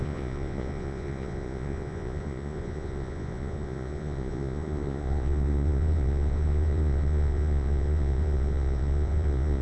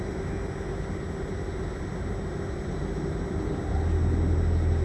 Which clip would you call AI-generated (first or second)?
first